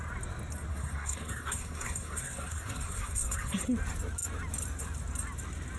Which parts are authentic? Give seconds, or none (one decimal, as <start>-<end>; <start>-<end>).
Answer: 0.0-0.7; 3.6-5.8